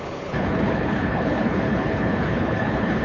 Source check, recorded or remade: remade